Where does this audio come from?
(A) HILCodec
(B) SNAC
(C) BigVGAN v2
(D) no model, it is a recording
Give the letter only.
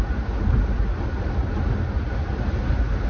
D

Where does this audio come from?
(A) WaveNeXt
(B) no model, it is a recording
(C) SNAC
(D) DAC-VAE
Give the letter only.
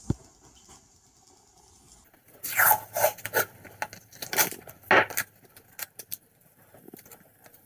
B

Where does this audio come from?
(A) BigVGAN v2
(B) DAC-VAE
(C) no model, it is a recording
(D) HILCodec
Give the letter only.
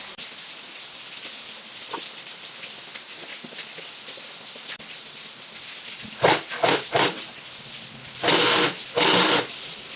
C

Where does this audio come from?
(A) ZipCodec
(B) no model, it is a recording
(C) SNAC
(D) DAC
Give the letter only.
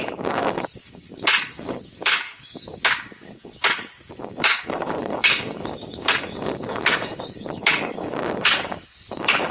D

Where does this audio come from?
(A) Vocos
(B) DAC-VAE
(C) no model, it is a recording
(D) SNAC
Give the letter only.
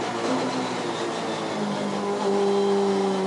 C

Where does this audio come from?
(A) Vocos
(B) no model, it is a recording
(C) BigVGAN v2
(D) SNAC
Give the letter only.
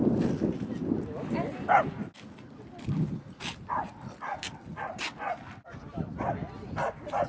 B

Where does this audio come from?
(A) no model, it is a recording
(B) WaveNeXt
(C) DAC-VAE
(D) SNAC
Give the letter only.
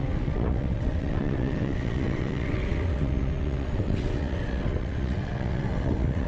B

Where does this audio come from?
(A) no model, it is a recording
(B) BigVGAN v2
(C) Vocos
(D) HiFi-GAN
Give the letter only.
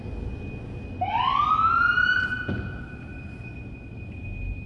A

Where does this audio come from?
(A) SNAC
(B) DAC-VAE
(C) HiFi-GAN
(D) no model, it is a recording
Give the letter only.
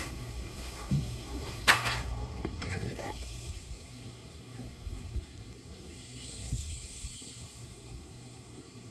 A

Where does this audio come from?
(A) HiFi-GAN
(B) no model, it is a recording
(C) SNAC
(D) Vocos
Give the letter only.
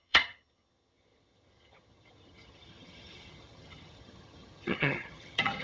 A